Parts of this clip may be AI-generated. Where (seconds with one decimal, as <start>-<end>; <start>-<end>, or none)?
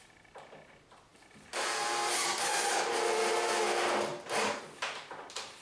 none